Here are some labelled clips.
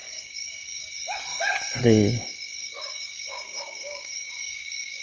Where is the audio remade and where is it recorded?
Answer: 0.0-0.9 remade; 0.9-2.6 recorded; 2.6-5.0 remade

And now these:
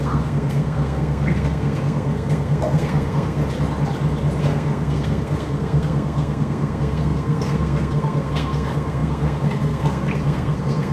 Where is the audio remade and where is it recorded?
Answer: 0.0-3.4 remade; 3.4-4.4 recorded; 4.4-10.9 remade

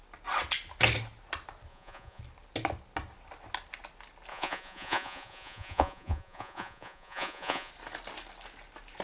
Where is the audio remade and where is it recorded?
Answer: 0.0-1.7 recorded; 1.7-2.2 remade; 2.2-4.3 recorded; 4.3-7.7 remade; 7.7-9.0 recorded

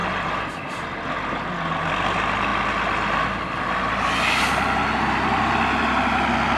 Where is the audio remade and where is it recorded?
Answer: 0.0-6.6 recorded